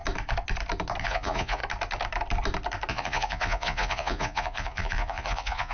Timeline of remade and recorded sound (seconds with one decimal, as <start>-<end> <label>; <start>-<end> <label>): 0.0-1.0 recorded; 1.0-1.6 remade; 1.6-2.9 recorded; 2.9-5.7 remade